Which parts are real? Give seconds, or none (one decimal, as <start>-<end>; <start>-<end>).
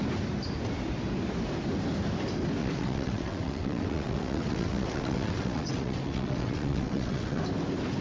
0.0-2.6; 7.4-8.0